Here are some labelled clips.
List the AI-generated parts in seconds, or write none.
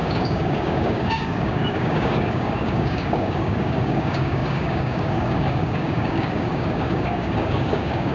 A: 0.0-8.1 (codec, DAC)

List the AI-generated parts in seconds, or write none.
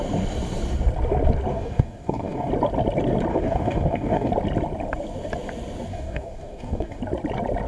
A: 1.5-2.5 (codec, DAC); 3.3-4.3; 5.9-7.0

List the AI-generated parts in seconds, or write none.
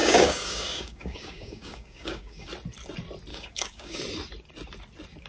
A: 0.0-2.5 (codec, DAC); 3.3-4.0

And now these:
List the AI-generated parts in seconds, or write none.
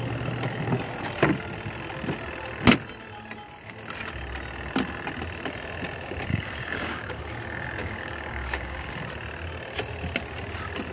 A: 6.3-7.2 (codec, DAC); 7.8-8.9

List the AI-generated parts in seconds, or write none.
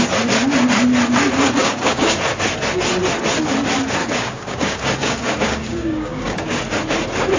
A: 1.6-2.2 (codec, DAC); 4.0-6.6